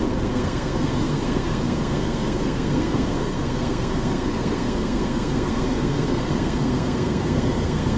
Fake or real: fake